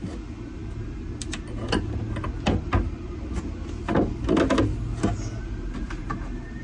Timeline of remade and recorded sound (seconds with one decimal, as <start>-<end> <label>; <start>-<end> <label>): 0.0-6.6 recorded